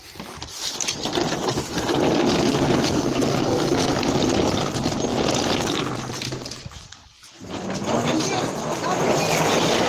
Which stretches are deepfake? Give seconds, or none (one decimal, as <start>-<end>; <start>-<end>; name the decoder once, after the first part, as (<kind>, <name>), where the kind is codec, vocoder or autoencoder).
2.5-3.9 (codec, SNAC)

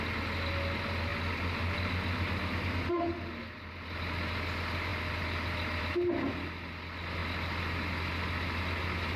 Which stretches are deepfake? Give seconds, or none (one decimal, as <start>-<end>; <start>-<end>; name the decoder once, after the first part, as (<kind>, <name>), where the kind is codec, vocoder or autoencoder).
none

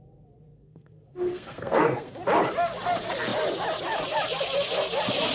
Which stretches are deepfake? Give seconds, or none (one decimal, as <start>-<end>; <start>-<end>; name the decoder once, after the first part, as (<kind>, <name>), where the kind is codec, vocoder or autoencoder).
0.5-2.1 (codec, SNAC)

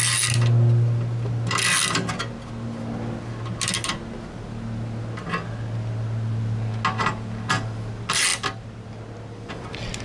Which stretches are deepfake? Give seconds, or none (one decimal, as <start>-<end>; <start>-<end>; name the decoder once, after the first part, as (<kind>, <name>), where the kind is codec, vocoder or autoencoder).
none

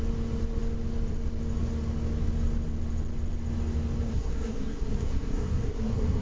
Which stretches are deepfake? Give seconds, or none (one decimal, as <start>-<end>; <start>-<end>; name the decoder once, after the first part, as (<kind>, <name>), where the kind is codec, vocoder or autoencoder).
4.1-6.2 (codec, SNAC)

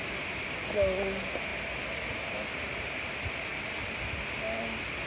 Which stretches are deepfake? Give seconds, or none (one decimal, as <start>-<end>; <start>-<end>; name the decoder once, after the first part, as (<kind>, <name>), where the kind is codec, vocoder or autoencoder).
none

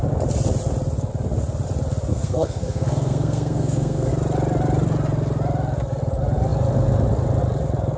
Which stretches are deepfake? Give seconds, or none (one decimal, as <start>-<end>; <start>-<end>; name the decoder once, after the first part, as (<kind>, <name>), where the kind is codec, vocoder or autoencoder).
2.1-4.1 (codec, SNAC)

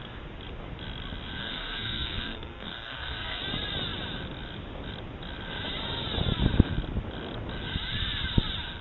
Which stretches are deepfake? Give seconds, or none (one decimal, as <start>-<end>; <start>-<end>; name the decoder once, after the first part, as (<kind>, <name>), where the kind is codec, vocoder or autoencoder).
1.4-3.4 (codec, SNAC)